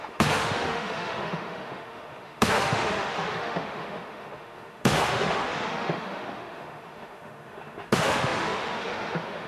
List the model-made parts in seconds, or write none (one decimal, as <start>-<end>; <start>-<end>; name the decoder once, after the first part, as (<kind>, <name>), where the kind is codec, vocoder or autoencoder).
0.0-9.5 (autoencoder, DAC-VAE)

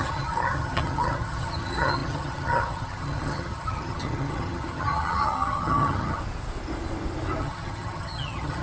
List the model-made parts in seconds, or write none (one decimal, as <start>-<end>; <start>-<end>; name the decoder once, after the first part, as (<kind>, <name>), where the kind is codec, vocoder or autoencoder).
0.0-6.2 (vocoder, HiFi-GAN); 7.4-8.6

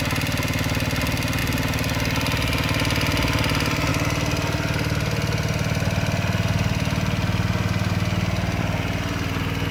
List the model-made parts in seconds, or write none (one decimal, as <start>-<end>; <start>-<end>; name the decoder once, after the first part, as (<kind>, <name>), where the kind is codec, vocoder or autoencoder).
none

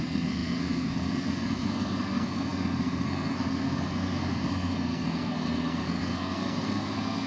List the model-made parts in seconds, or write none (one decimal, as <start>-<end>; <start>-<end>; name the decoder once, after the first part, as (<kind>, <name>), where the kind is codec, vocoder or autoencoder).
0.0-7.3 (codec, SNAC)